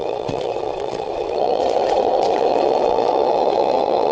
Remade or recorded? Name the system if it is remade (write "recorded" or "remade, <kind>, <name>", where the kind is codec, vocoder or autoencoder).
remade, vocoder, WaveNeXt